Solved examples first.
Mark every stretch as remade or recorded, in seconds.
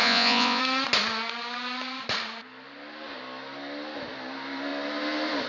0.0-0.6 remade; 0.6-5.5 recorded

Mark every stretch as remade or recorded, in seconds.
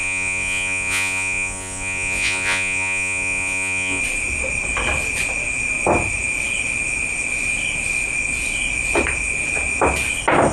0.0-4.0 remade; 4.0-10.5 recorded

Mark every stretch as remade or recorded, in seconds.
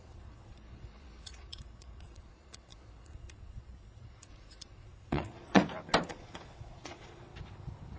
0.0-5.6 remade; 5.6-6.1 recorded; 6.1-7.3 remade; 7.3-8.0 recorded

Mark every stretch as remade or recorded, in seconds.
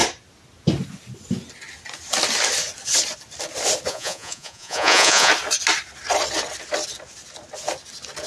0.0-3.9 recorded; 3.9-5.3 remade; 5.3-8.3 recorded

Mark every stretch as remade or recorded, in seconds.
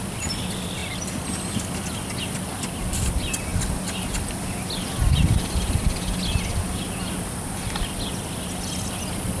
0.0-9.4 recorded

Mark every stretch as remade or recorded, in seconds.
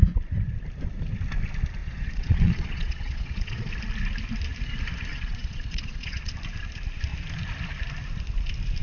0.0-1.8 recorded; 1.8-3.7 remade; 3.7-5.1 recorded; 5.1-6.3 remade; 6.3-8.8 recorded